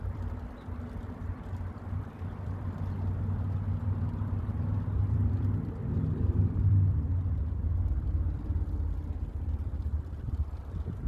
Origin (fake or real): fake